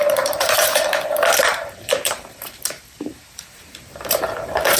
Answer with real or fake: fake